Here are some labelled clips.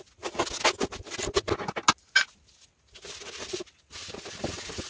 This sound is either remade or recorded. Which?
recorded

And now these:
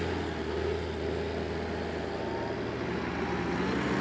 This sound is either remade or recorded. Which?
recorded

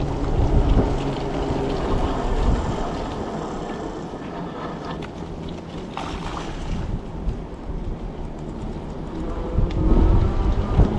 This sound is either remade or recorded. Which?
recorded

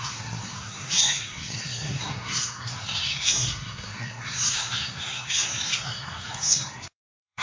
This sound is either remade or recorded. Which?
remade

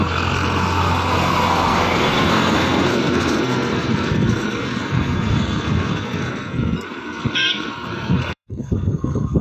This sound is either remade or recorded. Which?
remade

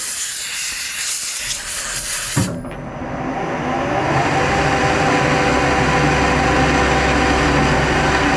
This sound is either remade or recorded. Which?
recorded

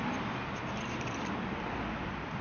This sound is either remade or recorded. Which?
recorded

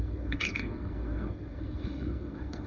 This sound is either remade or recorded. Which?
remade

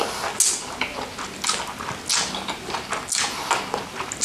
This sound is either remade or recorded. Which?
recorded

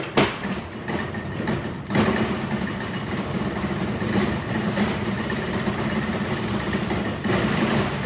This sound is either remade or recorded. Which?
recorded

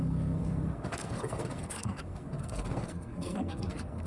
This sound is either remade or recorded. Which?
remade